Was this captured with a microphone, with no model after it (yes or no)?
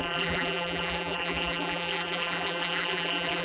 no